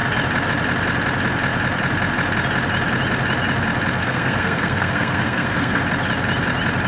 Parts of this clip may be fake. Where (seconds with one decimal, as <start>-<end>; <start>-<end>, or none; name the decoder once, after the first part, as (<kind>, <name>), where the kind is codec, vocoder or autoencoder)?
4.0-5.8 (codec, SNAC)